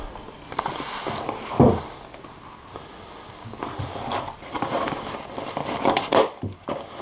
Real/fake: real